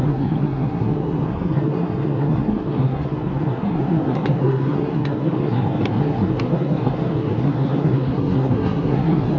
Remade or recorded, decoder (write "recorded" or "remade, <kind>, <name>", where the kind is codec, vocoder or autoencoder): remade, codec, SNAC